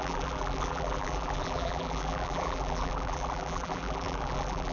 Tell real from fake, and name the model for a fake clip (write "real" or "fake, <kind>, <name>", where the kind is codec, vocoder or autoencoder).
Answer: fake, vocoder, BigVGAN v2